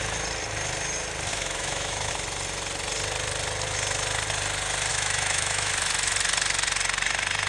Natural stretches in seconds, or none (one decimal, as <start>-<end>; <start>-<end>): 0.0-1.3; 2.1-4.9; 5.7-7.5